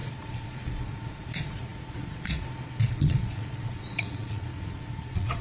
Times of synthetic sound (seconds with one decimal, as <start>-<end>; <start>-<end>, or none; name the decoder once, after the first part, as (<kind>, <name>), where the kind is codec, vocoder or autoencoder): 0.0-5.4 (vocoder, Vocos)